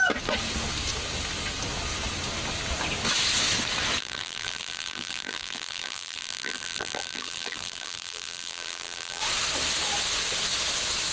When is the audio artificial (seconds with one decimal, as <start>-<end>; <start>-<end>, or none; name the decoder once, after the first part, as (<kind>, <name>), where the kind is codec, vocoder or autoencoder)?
4.0-9.2 (vocoder, BigVGAN v2)

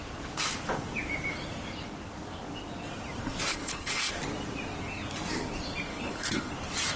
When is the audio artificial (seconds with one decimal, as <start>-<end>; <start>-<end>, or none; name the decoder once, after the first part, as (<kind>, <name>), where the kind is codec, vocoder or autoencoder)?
3.5-4.1 (codec, HILCodec); 5.9-6.5